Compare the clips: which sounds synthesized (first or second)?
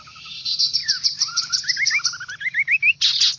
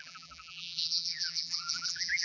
second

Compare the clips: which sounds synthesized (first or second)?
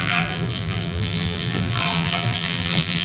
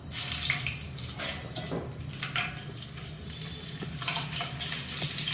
first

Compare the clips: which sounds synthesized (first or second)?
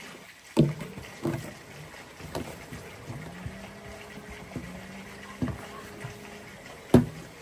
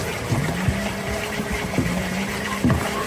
second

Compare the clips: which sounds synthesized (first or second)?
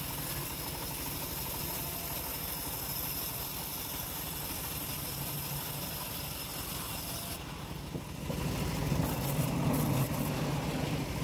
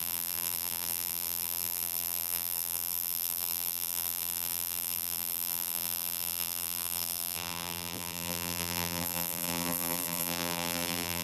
second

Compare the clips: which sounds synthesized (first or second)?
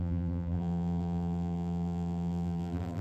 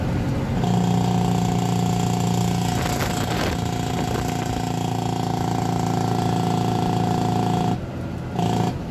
first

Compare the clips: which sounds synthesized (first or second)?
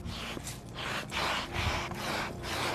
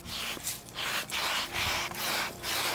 second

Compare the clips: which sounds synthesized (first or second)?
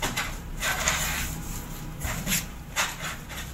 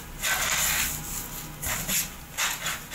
first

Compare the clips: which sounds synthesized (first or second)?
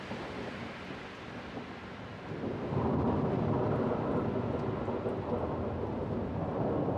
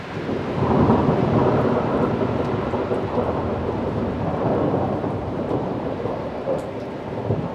second